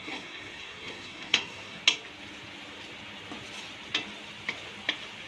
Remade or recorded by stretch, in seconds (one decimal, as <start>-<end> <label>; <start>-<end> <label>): 0.0-1.8 remade; 1.8-5.3 recorded